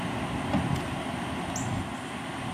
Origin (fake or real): real